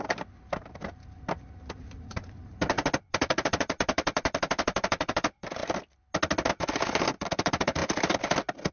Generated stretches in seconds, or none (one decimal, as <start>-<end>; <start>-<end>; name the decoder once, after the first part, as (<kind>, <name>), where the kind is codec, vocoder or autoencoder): 0.0-2.5 (vocoder, BigVGAN v2); 3.1-5.6; 6.5-7.8